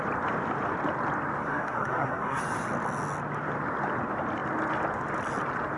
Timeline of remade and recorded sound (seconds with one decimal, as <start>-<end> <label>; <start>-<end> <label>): 0.0-1.4 recorded; 1.4-2.4 remade; 2.4-5.8 recorded